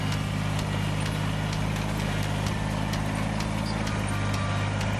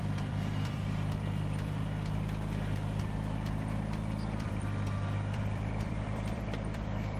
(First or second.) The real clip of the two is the first